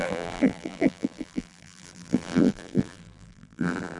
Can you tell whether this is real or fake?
fake